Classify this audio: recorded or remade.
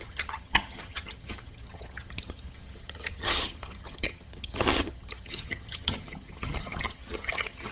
remade